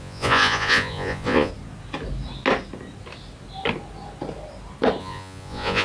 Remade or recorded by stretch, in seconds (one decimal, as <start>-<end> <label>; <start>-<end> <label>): 0.0-1.5 remade; 1.5-5.0 recorded; 5.0-5.8 remade